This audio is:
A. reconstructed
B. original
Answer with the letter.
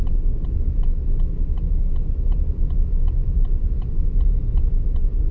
B